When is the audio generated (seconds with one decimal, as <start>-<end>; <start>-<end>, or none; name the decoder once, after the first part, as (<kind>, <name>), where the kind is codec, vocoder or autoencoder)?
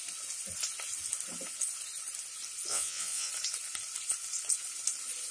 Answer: 2.7-3.3 (vocoder, WaveNeXt)